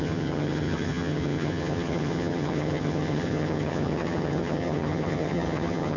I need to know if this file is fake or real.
fake